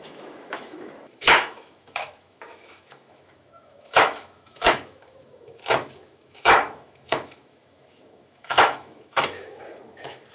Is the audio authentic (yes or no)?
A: no